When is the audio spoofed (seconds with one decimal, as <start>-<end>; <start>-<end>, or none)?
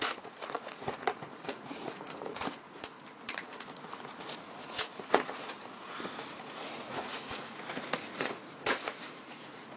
0.0-9.8